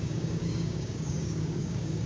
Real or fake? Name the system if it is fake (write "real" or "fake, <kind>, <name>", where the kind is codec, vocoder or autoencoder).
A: fake, codec, DAC